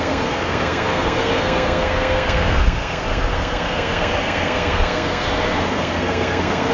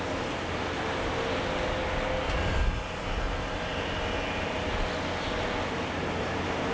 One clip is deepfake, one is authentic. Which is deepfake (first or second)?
first